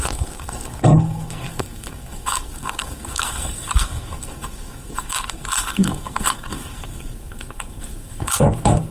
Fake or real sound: fake